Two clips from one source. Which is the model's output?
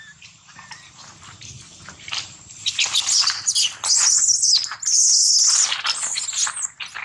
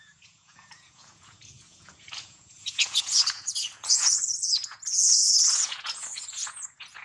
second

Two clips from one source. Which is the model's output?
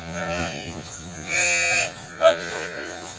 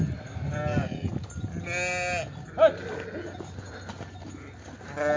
first